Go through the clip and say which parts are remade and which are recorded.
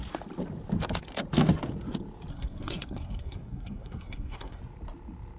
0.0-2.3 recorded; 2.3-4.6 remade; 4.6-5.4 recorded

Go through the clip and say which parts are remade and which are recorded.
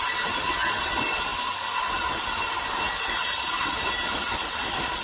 0.0-5.0 recorded